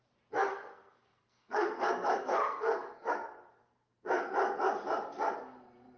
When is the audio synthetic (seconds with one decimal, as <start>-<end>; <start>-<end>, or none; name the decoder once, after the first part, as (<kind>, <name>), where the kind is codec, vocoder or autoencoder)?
0.5-3.1 (codec, SNAC); 3.6-4.3